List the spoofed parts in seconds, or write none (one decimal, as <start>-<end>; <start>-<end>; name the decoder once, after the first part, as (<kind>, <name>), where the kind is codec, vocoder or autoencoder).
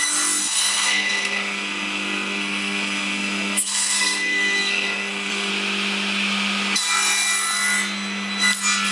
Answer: 0.4-5.5 (codec, SNAC)